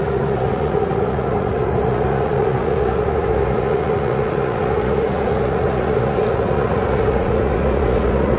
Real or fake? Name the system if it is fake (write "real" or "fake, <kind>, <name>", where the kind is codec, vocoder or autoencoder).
fake, vocoder, Vocos